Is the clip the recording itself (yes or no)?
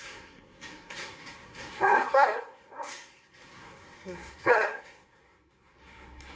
no